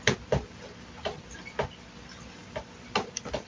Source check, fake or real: real